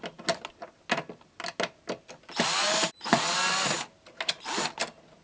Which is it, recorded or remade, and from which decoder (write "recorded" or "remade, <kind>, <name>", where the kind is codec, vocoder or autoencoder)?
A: recorded